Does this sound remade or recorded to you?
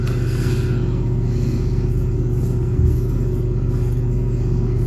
remade